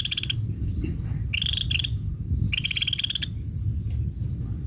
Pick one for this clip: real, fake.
real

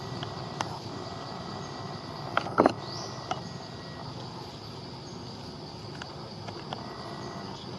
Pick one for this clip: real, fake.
real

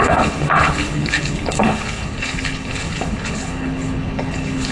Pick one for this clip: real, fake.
fake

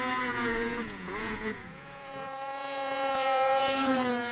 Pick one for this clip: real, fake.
fake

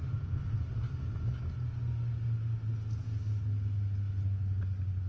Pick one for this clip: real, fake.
real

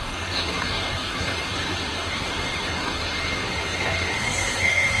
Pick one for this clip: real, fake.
fake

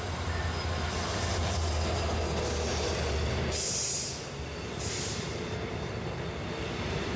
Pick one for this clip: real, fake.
real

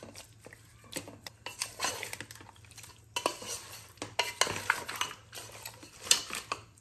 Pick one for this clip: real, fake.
real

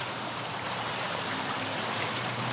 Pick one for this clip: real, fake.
fake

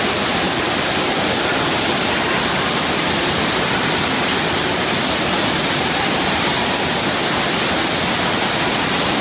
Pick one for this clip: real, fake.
real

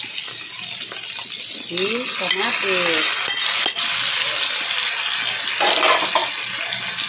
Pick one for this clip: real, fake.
real